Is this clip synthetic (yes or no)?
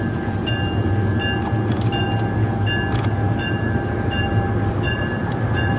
no